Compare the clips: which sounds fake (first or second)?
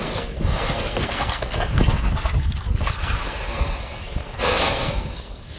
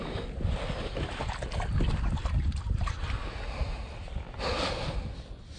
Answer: first